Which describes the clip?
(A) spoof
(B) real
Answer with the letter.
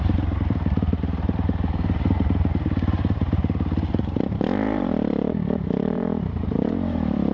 A